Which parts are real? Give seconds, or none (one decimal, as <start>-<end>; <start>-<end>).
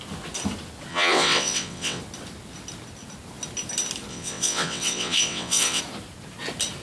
0.0-0.9; 2.0-4.1; 5.8-6.8